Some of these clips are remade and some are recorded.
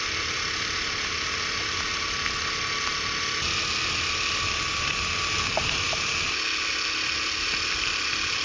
recorded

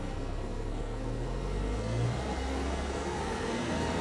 remade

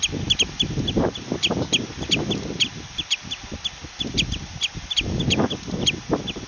recorded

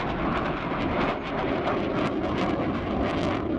recorded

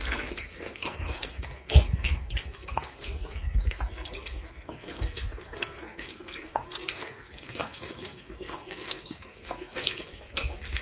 remade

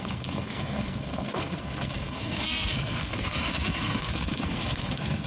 remade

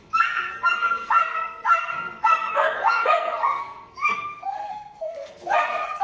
remade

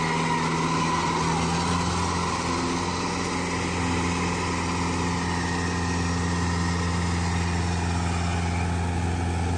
recorded